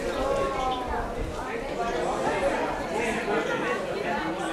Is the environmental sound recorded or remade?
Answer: recorded